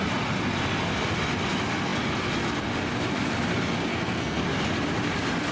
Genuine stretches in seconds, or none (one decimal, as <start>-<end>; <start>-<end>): 0.0-3.9; 4.4-5.5